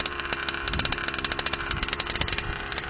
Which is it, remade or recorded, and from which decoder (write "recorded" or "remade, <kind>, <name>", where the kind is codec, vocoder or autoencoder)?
recorded